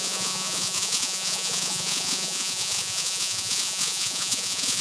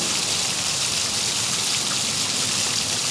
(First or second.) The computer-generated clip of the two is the first